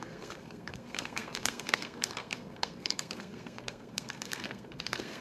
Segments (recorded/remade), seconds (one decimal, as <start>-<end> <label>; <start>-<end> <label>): 0.0-5.2 remade